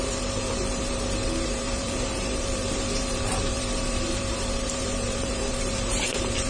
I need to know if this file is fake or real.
fake